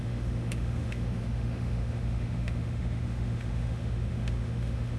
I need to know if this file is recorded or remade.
remade